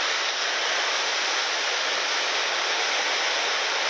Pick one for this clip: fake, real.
real